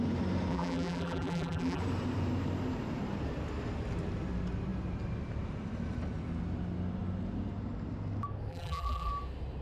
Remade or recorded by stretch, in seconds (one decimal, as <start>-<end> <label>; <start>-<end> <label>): 0.0-0.5 recorded; 0.5-1.8 remade; 1.8-8.5 recorded; 8.5-9.1 remade; 9.1-9.6 recorded